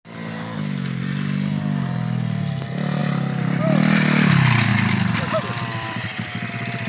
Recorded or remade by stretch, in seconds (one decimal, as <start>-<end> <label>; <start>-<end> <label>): 0.0-4.7 recorded; 4.7-6.5 remade; 6.5-6.9 recorded